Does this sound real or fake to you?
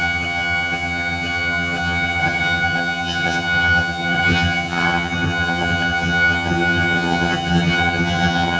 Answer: fake